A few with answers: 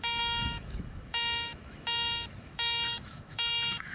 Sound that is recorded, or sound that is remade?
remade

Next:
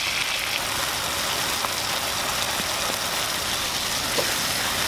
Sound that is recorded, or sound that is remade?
recorded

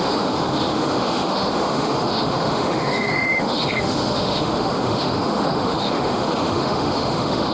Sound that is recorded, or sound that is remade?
remade